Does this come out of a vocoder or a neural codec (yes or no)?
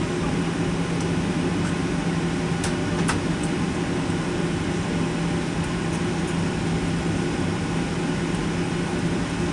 no